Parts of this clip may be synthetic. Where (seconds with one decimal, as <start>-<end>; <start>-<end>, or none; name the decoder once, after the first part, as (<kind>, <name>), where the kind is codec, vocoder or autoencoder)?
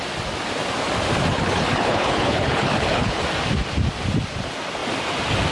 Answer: 1.3-3.2 (codec, HILCodec)